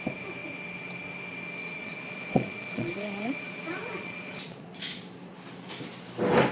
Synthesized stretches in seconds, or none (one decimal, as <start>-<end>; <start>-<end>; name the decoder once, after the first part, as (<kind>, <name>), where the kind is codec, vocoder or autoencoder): 1.6-5.1 (vocoder, Vocos)